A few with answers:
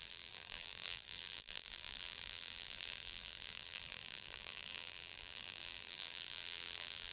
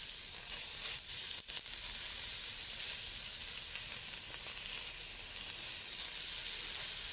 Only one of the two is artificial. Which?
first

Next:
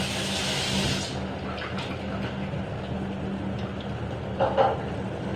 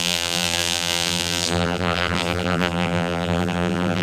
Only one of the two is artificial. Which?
second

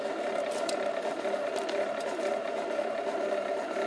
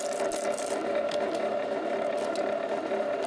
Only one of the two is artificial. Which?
first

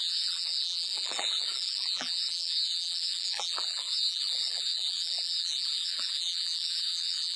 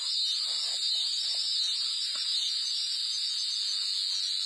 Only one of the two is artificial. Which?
first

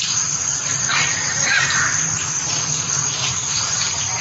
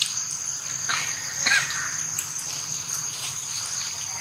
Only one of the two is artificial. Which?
first